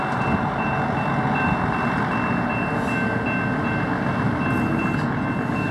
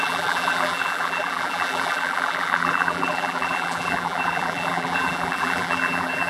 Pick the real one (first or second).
first